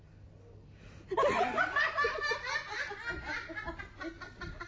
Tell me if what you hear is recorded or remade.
recorded